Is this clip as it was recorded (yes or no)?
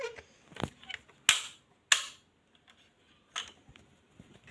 yes